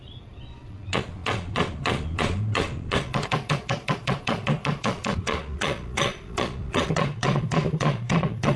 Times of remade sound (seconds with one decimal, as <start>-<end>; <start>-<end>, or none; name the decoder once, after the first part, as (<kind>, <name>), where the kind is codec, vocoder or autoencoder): 0.0-8.6 (vocoder, Vocos)